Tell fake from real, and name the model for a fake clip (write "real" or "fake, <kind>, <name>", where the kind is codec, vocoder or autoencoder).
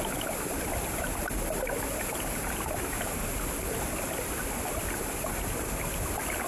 real